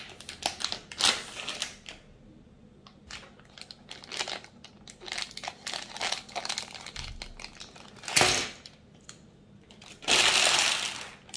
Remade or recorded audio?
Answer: recorded